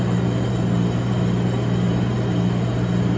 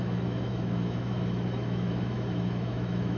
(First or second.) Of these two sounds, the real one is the first